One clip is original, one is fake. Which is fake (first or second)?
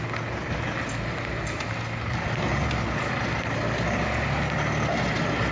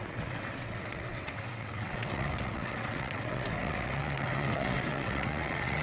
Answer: second